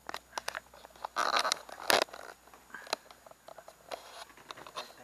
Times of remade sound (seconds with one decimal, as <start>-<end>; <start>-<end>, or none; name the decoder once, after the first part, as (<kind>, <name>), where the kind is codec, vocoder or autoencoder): none